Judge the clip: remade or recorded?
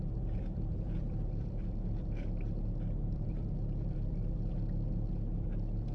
remade